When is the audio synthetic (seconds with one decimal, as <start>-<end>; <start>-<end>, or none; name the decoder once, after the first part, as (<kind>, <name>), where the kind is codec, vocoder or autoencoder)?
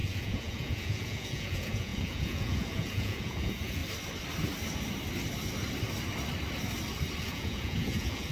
0.0-3.8 (vocoder, Vocos); 7.2-8.3